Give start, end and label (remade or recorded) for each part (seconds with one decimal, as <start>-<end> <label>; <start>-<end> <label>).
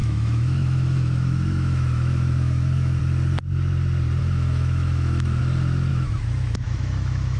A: 0.0-3.0 remade; 3.0-4.2 recorded; 4.2-5.4 remade; 5.4-5.9 recorded; 5.9-7.4 remade